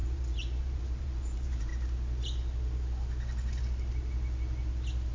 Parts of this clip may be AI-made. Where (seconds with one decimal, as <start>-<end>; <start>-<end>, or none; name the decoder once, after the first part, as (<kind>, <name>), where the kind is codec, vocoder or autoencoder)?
0.0-1.7 (vocoder, BigVGAN v2)